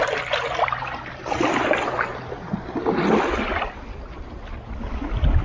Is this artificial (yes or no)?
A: no